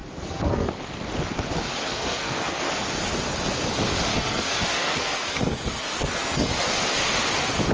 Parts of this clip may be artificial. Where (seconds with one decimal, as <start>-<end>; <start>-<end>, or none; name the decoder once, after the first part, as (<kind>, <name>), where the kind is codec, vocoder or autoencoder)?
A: 0.0-0.7 (codec, SNAC); 1.8-2.7; 4.1-6.5